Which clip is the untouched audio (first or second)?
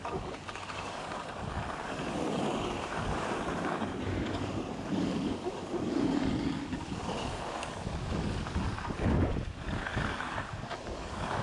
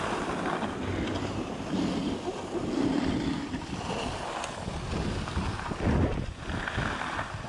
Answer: second